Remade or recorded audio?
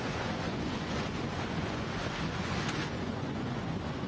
remade